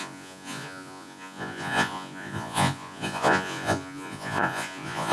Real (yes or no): no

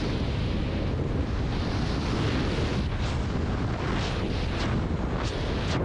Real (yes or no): yes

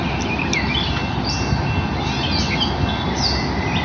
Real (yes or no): yes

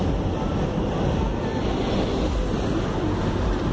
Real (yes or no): yes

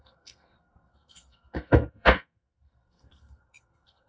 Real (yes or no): no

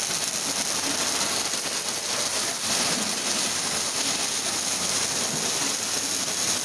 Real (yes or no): yes